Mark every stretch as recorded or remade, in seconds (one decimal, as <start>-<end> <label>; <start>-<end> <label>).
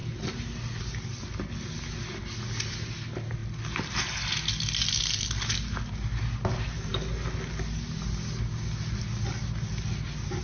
0.0-10.4 recorded